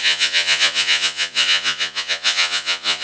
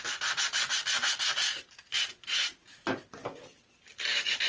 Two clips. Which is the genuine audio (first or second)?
second